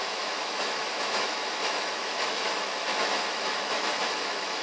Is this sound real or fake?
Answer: fake